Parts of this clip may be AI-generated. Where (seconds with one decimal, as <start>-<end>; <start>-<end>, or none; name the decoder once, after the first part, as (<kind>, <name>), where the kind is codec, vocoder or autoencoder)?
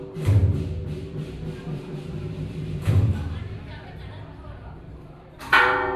0.0-3.8 (vocoder, BigVGAN v2); 5.2-6.0